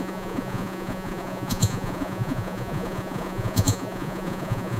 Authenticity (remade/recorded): remade